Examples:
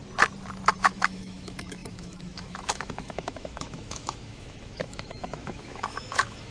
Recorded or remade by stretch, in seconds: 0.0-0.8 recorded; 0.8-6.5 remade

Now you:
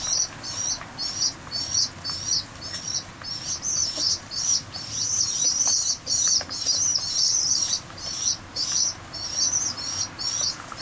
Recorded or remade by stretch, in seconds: 0.0-3.8 recorded; 3.8-8.2 remade; 8.2-10.8 recorded

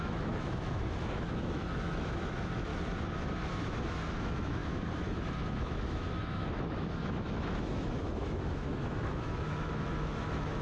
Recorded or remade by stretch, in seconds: 0.0-2.7 remade; 2.7-3.5 recorded; 3.5-10.6 remade

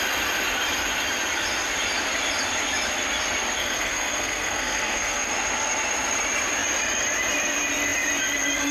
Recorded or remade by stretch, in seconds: 0.0-3.6 recorded; 3.6-5.3 remade; 5.3-8.7 recorded

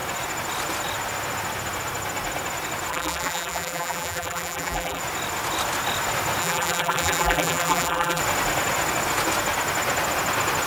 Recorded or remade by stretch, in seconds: 0.0-2.9 recorded; 2.9-5.0 remade; 5.0-6.4 recorded; 6.4-8.2 remade; 8.2-10.7 recorded

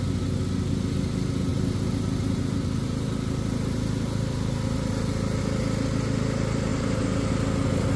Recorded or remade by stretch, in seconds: 0.0-1.5 recorded; 1.5-5.4 remade; 5.4-6.7 recorded; 6.7-7.3 remade; 7.3-8.0 recorded

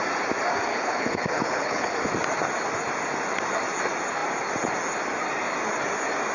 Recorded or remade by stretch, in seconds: 0.0-0.7 recorded; 0.7-1.9 remade; 1.9-6.3 recorded

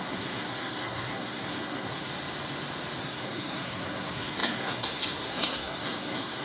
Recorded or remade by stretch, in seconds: 0.0-2.1 remade; 2.1-3.0 recorded; 3.0-6.4 remade